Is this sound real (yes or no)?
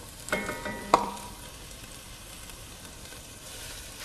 no